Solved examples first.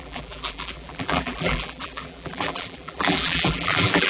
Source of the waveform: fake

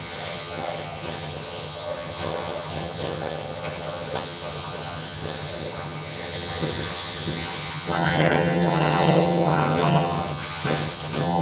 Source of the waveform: fake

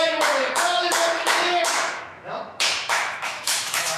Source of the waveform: fake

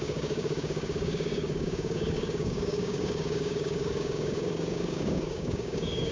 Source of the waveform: fake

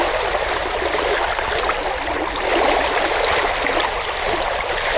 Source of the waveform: real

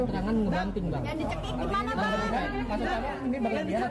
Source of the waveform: real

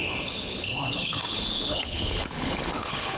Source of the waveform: fake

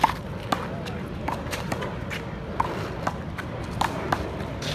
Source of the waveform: real